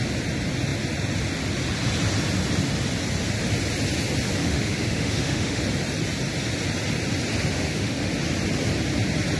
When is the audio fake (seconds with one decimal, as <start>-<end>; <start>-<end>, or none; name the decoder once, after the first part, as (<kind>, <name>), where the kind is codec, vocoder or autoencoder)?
4.4-5.6 (autoencoder, DAC-VAE); 7.5-8.1